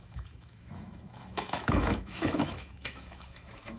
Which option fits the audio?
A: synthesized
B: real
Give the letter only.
A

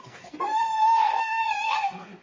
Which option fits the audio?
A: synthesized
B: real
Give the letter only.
A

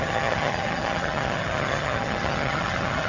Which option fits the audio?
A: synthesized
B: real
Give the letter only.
A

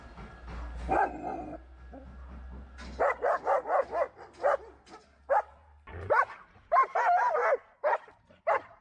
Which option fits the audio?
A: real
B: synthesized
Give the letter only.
A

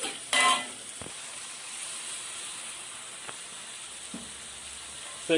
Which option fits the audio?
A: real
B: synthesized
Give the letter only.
A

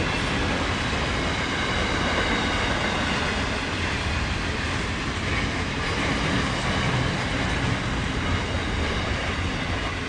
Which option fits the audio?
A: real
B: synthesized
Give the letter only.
A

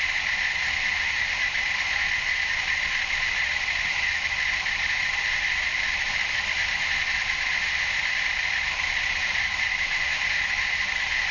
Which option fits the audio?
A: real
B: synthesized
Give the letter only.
A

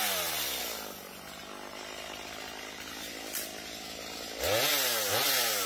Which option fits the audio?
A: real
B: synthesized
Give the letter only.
A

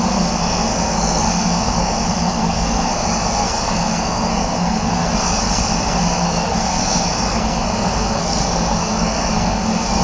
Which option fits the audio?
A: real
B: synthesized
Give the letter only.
B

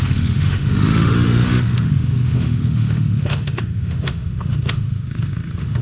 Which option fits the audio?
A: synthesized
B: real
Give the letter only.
A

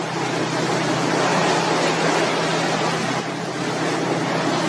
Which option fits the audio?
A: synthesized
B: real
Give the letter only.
B